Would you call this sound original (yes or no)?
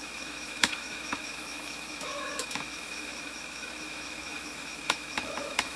no